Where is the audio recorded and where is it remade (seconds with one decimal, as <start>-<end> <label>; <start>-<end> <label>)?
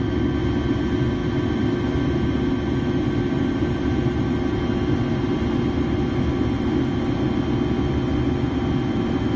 0.0-9.4 recorded